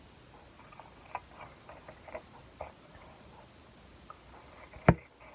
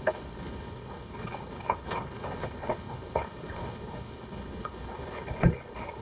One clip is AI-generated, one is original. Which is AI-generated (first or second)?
second